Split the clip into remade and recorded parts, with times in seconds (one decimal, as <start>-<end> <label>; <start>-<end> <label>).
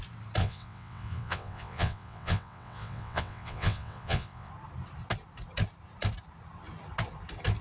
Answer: 0.0-0.4 recorded; 0.4-4.5 remade; 4.5-7.6 recorded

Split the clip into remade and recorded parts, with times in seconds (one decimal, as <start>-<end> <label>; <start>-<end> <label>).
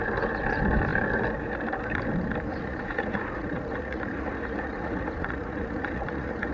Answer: 0.0-2.5 recorded; 2.5-6.5 remade